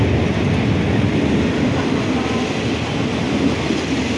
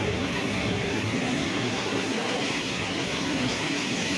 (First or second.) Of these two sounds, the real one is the first